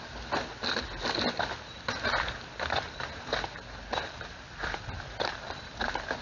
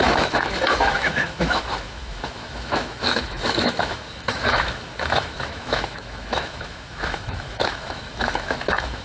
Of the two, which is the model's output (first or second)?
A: second